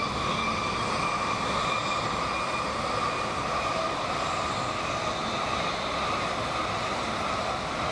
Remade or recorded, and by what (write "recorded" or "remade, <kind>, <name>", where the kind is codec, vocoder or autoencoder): recorded